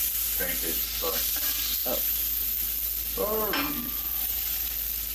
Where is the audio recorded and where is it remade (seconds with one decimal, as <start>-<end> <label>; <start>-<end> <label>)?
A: 0.0-5.1 recorded